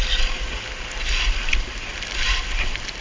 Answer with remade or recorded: recorded